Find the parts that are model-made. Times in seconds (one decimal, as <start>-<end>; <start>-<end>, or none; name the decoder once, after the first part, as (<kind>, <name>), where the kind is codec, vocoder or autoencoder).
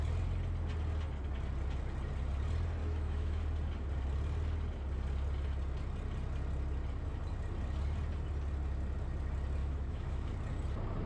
2.8-3.4 (autoencoder, DAC-VAE); 9.6-10.3